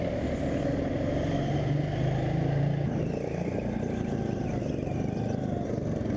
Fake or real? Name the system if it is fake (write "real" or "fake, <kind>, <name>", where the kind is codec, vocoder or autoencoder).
real